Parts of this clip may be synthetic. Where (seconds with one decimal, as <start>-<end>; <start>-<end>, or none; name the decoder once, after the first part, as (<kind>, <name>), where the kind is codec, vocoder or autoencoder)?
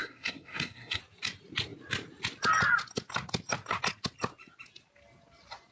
0.0-1.0 (codec, SNAC)